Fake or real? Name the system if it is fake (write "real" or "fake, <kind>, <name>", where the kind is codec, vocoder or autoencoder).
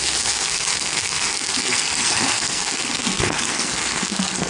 fake, codec, SNAC